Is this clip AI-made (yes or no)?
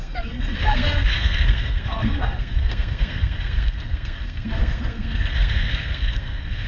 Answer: yes